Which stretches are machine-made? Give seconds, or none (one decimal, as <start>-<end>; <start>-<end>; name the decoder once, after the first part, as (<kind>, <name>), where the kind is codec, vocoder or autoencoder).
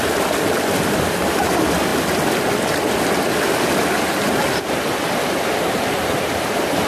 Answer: none